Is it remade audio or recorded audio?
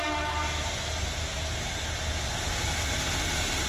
recorded